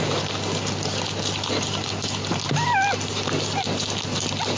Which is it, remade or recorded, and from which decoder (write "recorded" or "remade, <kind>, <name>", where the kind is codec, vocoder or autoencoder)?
recorded